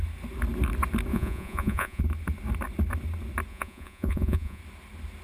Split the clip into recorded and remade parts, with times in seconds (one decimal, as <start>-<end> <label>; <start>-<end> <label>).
0.0-1.1 recorded; 1.1-2.0 remade; 2.0-3.5 recorded; 3.5-4.6 remade; 4.6-5.2 recorded